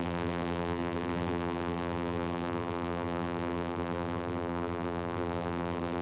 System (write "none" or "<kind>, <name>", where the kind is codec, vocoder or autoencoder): vocoder, BigVGAN v2